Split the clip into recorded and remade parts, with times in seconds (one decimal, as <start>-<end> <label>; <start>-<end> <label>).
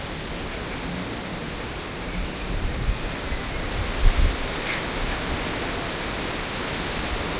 0.0-7.4 recorded